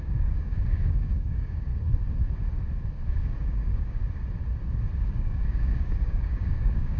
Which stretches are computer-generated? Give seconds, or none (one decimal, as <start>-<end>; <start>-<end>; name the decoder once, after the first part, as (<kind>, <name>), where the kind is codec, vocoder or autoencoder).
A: 0.0-1.7 (codec, DAC); 3.1-4.0; 5.0-7.0